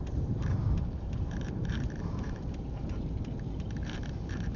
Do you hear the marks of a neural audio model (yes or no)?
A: yes